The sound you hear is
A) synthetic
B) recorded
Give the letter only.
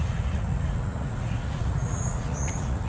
A